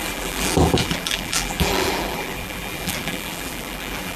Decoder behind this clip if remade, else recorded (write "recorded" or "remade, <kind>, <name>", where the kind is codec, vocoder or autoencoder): remade, vocoder, BigVGAN v2